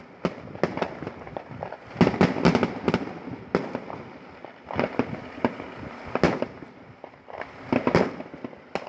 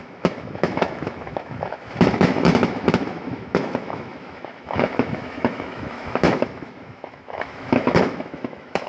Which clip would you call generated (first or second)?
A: second